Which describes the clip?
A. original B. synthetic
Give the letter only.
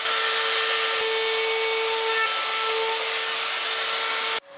A